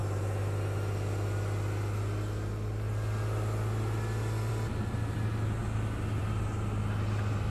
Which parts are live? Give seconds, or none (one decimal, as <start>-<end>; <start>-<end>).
0.0-7.5